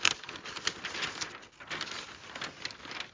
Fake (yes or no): no